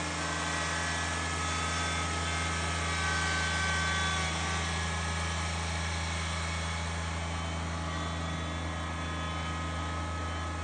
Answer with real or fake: real